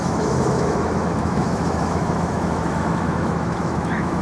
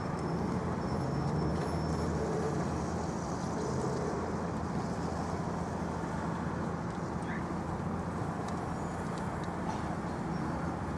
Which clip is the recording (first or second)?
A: second